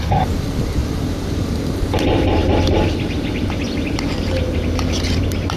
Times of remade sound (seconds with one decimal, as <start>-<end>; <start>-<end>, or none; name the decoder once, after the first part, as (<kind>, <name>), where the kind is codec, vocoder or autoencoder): 0.0-5.6 (vocoder, BigVGAN v2)

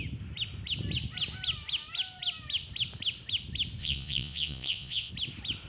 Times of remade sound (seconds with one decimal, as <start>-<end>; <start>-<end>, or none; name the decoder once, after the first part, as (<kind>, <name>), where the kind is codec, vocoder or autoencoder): 3.8-5.1 (vocoder, Vocos)

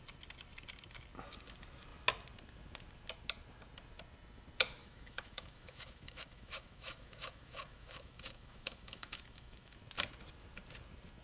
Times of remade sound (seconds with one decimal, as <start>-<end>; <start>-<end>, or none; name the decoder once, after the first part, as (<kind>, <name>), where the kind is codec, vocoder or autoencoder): 4.8-9.8 (autoencoder, DAC-VAE)

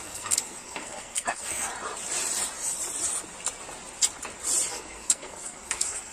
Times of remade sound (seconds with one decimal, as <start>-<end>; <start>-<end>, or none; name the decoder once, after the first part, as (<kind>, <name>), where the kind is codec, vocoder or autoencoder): 0.0-1.7 (codec, SNAC); 4.7-6.1

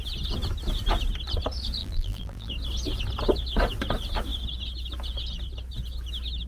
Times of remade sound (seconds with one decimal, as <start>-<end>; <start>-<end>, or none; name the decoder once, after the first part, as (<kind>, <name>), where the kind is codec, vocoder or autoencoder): 1.8-2.5 (vocoder, BigVGAN v2)

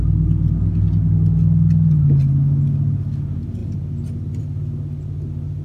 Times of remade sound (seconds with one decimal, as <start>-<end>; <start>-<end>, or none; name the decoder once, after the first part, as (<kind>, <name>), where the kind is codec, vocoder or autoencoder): none

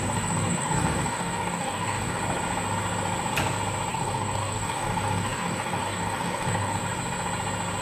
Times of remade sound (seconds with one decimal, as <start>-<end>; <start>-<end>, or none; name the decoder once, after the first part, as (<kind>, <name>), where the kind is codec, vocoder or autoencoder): 0.0-2.2 (codec, DAC); 3.9-6.8